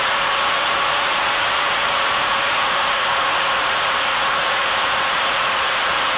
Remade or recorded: remade